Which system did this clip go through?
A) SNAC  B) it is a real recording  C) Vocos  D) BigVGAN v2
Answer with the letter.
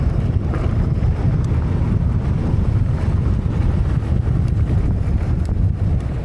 B